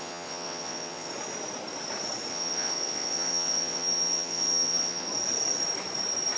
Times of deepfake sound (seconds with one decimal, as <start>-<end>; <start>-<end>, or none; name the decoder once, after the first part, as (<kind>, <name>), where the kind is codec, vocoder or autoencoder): 0.0-1.1 (vocoder, WaveNeXt); 2.3-5.1